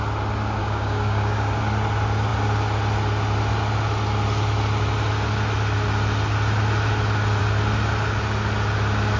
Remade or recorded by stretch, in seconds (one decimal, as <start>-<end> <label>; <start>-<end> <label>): 0.0-0.6 recorded; 0.6-1.6 remade; 1.6-9.2 recorded